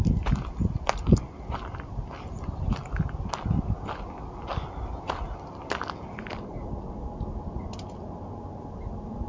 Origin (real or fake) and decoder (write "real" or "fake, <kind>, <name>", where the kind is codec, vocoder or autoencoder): real